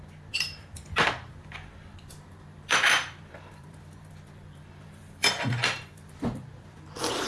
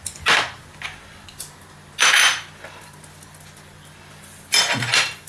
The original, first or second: second